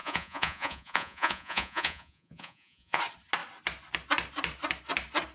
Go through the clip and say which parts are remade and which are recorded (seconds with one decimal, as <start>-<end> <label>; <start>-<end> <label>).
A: 0.0-3.0 remade; 3.0-5.3 recorded